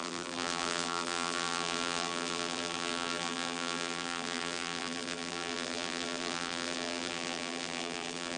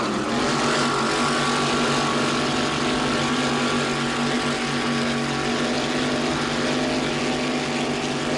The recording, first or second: second